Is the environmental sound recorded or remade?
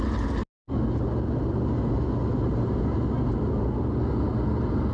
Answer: recorded